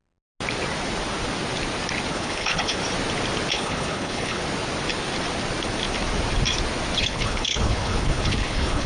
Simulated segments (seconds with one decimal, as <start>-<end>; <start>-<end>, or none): 2.1-2.8; 3.5-4.4; 7.0-8.9